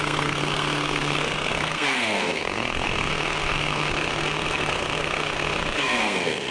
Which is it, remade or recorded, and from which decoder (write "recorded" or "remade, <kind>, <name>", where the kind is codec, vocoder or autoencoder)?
remade, codec, SNAC